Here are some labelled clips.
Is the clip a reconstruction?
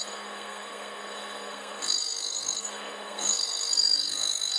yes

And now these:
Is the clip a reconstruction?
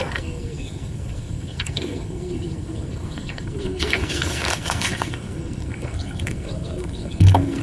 yes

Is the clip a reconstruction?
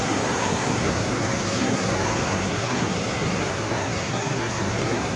yes